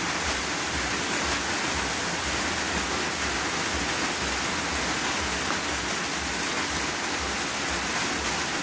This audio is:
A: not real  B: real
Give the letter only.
B